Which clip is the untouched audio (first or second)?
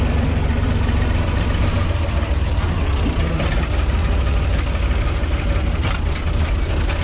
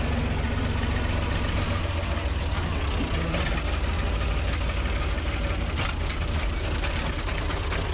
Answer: second